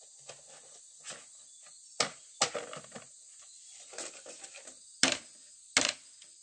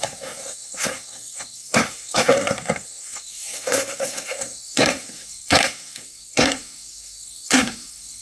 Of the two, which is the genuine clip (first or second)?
first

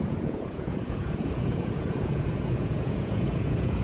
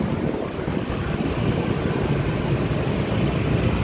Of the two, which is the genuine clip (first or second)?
second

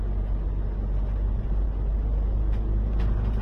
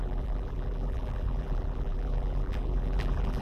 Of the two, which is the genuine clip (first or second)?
first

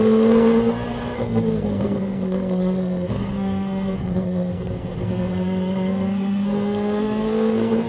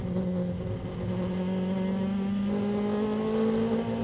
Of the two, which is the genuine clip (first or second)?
second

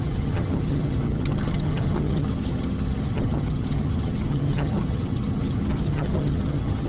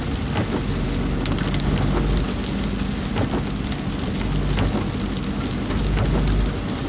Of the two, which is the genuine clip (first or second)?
second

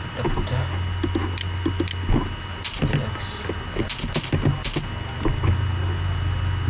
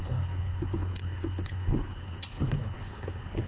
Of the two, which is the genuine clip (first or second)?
first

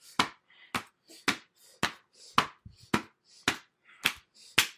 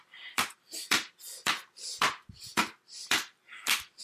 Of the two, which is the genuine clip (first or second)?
first